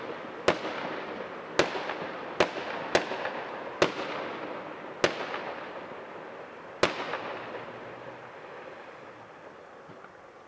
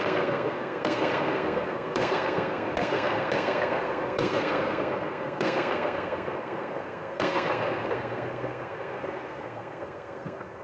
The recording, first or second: first